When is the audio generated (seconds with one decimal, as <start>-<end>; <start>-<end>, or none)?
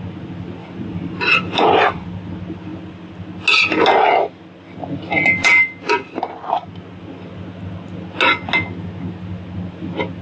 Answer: 0.6-2.1